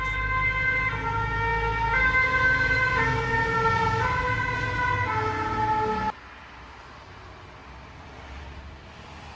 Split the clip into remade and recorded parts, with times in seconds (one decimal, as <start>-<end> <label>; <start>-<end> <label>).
0.0-9.4 recorded